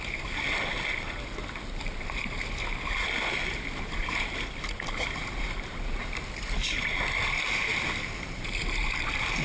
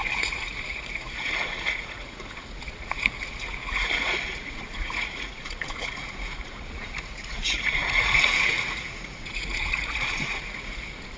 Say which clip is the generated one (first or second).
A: second